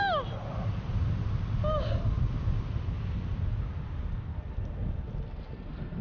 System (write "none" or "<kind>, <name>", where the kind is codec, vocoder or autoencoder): none